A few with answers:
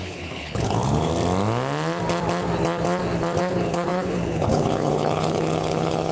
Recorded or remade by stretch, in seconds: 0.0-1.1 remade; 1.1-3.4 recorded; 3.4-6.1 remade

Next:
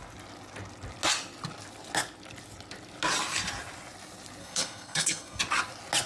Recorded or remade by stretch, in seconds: 0.0-4.4 recorded; 4.4-5.4 remade; 5.4-6.1 recorded

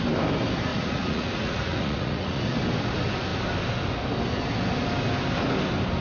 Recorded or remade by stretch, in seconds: 0.0-0.7 recorded; 0.7-2.4 remade; 2.4-6.0 recorded

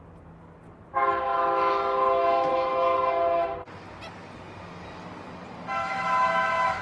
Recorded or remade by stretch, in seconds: 0.0-5.8 recorded; 5.8-6.8 remade

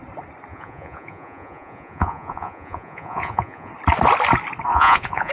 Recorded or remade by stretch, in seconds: 0.0-0.5 recorded; 0.5-3.7 remade; 3.7-4.7 recorded; 4.7-5.3 remade